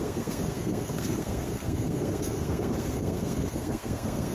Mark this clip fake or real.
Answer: fake